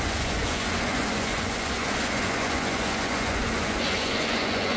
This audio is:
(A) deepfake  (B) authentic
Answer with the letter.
A